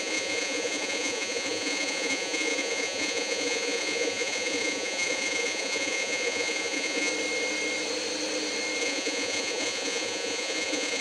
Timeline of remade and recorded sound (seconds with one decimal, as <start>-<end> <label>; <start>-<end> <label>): 0.0-7.1 remade; 7.1-8.8 recorded; 8.8-11.0 remade